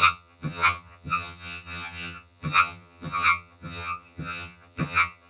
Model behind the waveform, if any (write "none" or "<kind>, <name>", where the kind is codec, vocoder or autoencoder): vocoder, HiFi-GAN